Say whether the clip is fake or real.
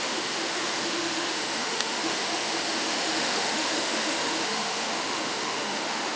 fake